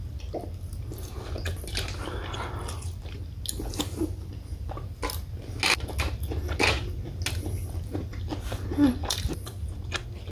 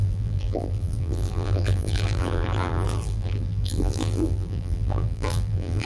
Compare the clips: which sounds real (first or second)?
first